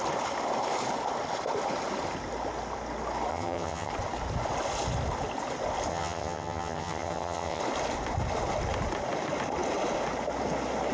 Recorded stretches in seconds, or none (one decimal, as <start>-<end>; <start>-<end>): 0.0-3.3; 3.9-5.9; 7.6-10.9